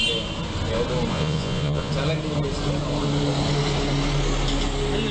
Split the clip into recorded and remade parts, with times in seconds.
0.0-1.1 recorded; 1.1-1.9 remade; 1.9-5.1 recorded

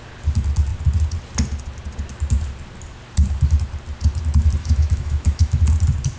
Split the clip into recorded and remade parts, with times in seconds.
0.0-4.6 recorded; 4.6-5.6 remade; 5.6-6.2 recorded

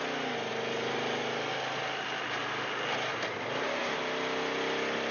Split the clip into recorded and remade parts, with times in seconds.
0.0-5.1 recorded

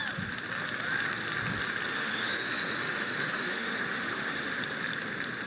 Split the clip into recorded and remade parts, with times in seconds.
0.0-1.9 recorded; 1.9-4.6 remade; 4.6-5.5 recorded

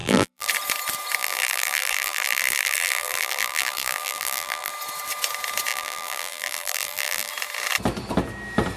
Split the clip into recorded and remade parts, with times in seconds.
0.0-0.5 remade; 0.5-1.2 recorded; 1.2-4.7 remade; 4.7-5.7 recorded; 5.7-7.3 remade; 7.3-8.8 recorded

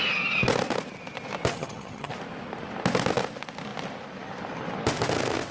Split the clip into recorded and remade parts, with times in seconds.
0.0-1.5 recorded; 1.5-2.1 remade; 2.1-5.5 recorded

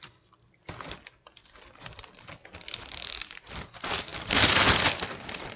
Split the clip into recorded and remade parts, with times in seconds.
0.0-2.4 remade; 2.4-3.2 recorded; 3.2-4.1 remade; 4.1-4.7 recorded; 4.7-5.6 remade

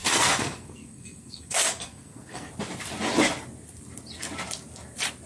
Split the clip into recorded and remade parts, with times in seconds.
0.0-2.5 remade; 2.5-5.3 recorded